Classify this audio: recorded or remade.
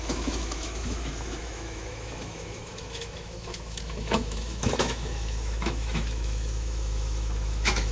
remade